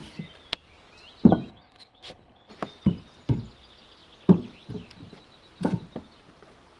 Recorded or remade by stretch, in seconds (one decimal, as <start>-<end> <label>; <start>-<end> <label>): 0.0-1.5 recorded; 1.5-2.5 remade; 2.5-6.8 recorded